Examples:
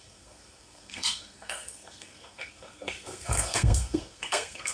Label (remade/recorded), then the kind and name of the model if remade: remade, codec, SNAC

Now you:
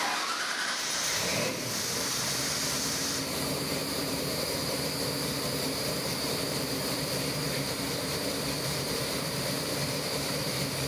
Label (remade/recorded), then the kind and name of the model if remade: remade, vocoder, BigVGAN v2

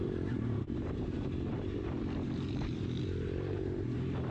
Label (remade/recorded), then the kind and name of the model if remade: remade, vocoder, BigVGAN v2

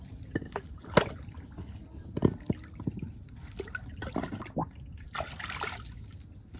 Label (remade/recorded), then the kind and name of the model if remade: recorded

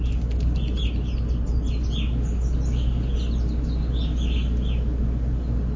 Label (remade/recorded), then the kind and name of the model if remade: recorded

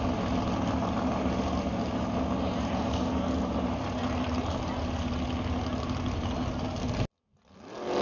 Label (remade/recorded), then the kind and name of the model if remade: recorded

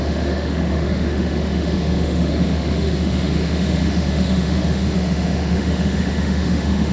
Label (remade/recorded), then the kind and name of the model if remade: remade, autoencoder, DAC-VAE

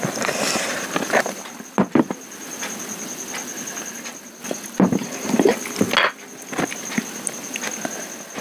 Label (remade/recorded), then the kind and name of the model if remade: recorded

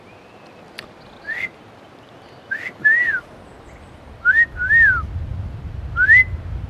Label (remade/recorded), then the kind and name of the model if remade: recorded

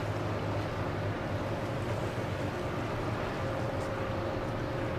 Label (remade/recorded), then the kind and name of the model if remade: recorded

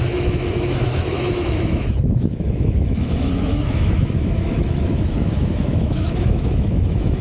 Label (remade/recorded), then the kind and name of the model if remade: remade, autoencoder, DAC-VAE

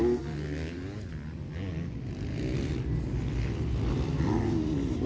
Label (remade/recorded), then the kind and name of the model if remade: recorded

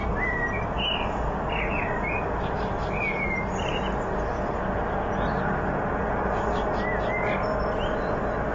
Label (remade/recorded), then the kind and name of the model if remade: recorded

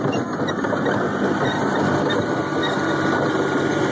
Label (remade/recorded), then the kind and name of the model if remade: recorded